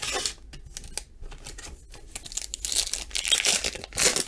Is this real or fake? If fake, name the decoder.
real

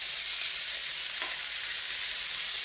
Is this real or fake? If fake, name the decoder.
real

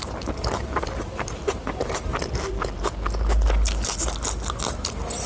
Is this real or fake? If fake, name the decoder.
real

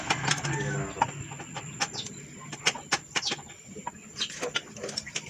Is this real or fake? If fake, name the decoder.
real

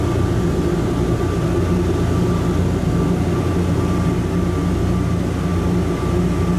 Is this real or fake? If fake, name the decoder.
real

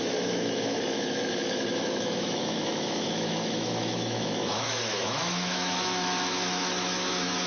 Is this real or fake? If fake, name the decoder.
fake, autoencoder, DAC-VAE